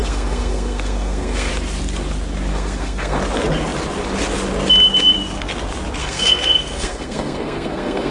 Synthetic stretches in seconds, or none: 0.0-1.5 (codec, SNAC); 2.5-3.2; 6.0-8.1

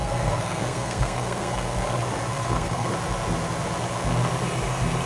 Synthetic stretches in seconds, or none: 0.0-1.8 (codec, SNAC); 2.3-2.9

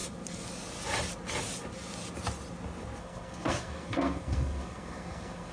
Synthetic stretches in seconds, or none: 3.0-5.5 (codec, SNAC)